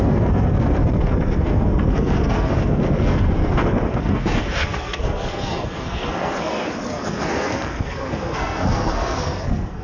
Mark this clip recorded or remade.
remade